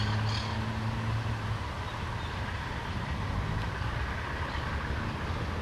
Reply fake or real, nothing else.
real